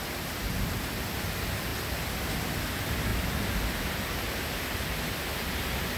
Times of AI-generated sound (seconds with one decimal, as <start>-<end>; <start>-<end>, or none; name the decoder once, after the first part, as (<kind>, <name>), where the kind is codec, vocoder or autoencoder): none